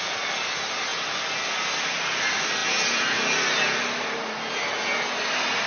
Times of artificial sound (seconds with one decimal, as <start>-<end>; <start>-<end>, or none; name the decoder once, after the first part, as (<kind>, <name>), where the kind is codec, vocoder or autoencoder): none